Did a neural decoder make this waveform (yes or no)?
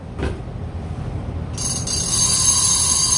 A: yes